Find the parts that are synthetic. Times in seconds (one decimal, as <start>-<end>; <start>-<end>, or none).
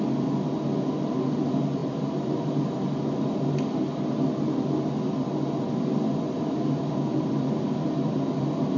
none